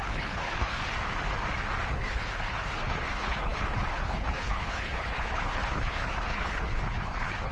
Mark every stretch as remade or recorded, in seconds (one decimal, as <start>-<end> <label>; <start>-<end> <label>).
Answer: 0.0-0.8 remade; 0.8-1.9 recorded; 1.9-7.5 remade